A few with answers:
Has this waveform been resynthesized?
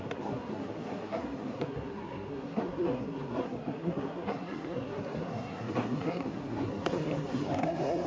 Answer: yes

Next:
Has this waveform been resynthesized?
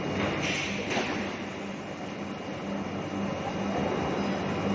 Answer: no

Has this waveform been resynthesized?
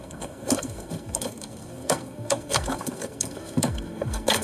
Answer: yes